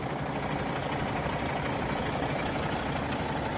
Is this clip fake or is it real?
real